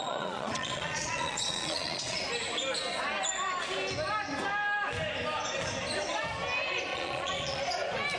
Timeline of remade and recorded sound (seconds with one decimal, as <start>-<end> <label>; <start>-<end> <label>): 0.0-2.2 remade; 2.2-6.9 recorded; 6.9-7.6 remade; 7.6-8.2 recorded